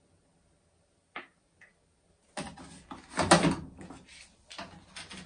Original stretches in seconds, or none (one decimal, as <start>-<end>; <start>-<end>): 0.0-5.3